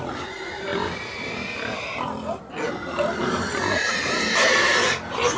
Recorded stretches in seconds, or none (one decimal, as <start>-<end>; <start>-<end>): 0.0-5.4